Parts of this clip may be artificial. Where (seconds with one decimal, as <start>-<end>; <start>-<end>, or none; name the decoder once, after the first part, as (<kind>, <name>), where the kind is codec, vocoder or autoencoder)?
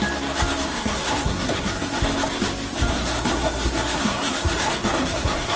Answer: 0.7-2.0 (codec, SNAC); 2.9-5.6